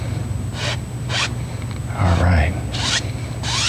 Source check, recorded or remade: recorded